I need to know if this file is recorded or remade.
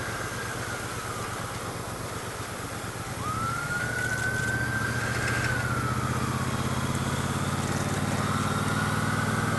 recorded